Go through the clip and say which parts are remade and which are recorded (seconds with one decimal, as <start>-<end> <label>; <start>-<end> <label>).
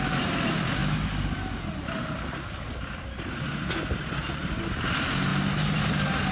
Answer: 0.0-6.3 recorded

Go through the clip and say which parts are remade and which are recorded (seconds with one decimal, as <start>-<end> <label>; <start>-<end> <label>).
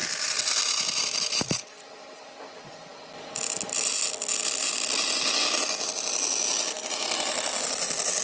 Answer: 0.0-2.9 remade; 2.9-6.8 recorded; 6.8-8.2 remade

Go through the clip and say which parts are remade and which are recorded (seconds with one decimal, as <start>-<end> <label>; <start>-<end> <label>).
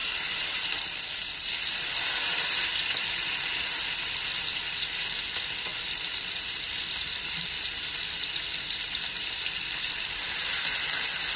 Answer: 0.0-4.8 remade; 4.8-5.7 recorded; 5.7-10.6 remade; 10.6-11.4 recorded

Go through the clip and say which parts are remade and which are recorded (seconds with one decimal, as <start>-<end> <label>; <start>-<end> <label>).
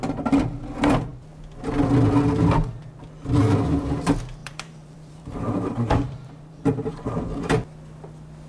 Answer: 0.0-4.4 recorded; 4.4-7.5 remade; 7.5-8.5 recorded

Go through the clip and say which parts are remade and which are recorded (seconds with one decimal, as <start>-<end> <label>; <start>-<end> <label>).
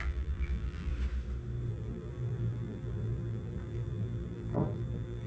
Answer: 0.0-0.9 remade; 0.9-1.7 recorded; 1.7-5.3 remade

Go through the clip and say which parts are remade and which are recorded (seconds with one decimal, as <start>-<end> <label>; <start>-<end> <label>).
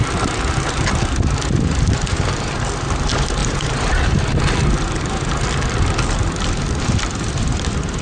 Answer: 0.0-3.4 recorded; 3.4-4.2 remade; 4.2-8.0 recorded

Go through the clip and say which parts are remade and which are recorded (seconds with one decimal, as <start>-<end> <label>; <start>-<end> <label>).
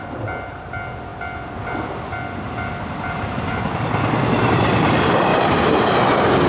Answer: 0.0-5.3 recorded; 5.3-5.9 remade; 5.9-6.5 recorded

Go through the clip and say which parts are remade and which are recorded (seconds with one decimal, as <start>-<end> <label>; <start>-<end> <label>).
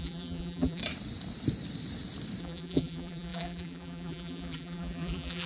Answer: 0.0-0.8 remade; 0.8-2.4 recorded; 2.4-5.5 remade